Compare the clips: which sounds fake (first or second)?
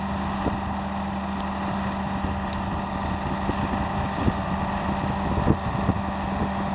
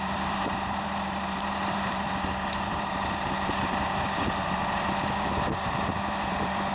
second